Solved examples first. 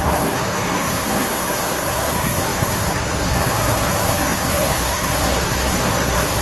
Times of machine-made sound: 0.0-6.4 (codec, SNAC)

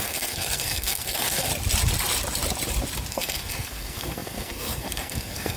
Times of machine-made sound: 0.0-1.5 (codec, SNAC); 3.1-5.6

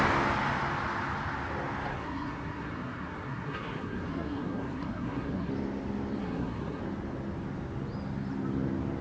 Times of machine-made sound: 1.9-5.5 (codec, SNAC); 6.2-6.8

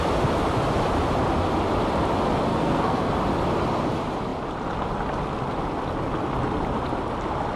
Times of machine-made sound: 2.5-3.1 (codec, SNAC)

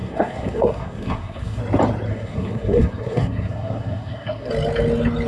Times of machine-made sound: 0.0-1.6 (codec, SNAC); 2.1-4.5

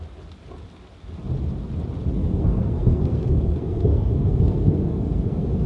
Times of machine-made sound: 2.2-5.7 (codec, SNAC)